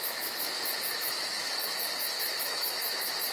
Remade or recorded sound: remade